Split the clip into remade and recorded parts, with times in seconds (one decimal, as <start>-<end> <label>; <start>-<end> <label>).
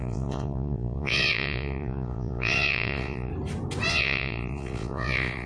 0.0-3.3 remade; 3.3-3.9 recorded; 3.9-5.5 remade